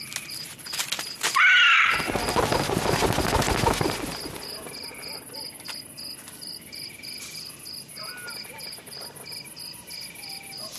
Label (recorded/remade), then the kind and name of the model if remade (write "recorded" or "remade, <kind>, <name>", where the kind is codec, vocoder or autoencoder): recorded